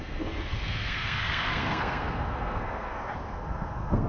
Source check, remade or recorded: remade